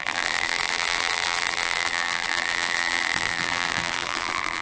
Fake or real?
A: fake